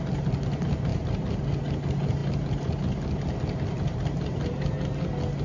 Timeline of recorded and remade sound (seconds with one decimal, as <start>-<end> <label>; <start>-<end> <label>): 0.0-5.4 recorded